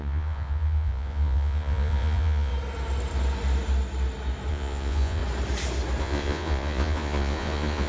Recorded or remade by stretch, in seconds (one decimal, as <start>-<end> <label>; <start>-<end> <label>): 0.0-2.5 remade; 2.5-4.5 recorded; 4.5-5.2 remade; 5.2-6.0 recorded; 6.0-7.9 remade